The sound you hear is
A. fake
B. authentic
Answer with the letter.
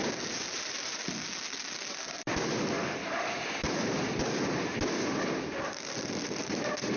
B